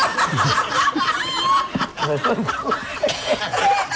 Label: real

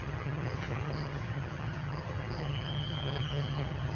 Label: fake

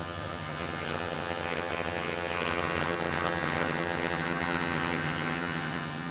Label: fake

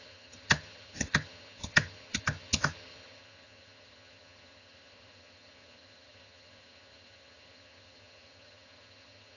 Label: fake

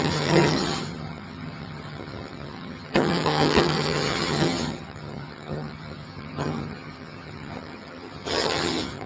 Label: fake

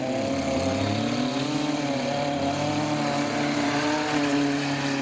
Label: real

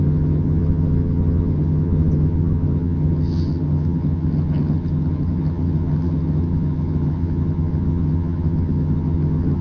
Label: fake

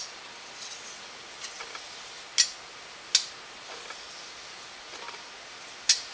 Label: real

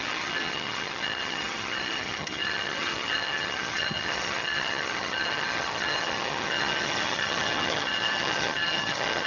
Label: fake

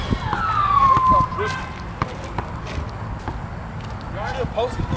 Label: real